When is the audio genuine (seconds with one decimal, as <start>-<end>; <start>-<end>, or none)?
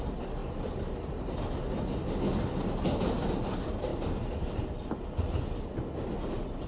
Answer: 0.0-3.9; 4.9-6.7